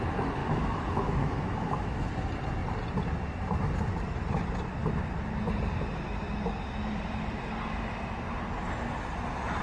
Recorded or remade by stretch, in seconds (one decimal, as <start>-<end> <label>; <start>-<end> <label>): 0.0-0.4 recorded; 0.4-2.1 remade; 2.1-9.6 recorded